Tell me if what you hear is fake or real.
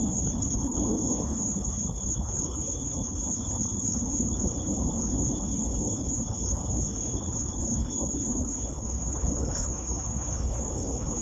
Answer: fake